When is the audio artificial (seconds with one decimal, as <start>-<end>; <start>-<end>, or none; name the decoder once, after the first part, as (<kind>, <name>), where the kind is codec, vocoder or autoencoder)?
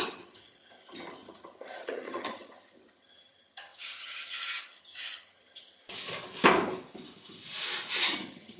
0.0-5.8 (vocoder, HiFi-GAN); 8.0-8.6